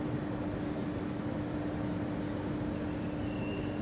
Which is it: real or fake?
real